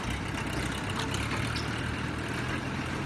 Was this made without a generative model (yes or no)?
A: yes